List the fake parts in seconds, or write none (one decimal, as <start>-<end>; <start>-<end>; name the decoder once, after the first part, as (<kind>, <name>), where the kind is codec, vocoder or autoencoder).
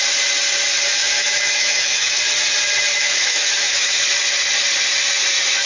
1.0-2.2 (autoencoder, DAC-VAE); 2.9-4.0